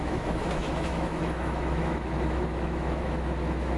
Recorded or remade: remade